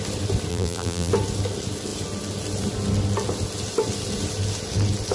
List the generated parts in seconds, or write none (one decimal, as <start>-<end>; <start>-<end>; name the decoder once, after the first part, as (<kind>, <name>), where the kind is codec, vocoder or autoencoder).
0.5-1.1 (vocoder, BigVGAN v2)